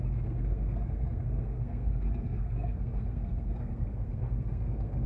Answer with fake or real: fake